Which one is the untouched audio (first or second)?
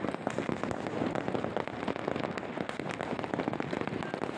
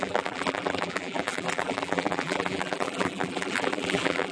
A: first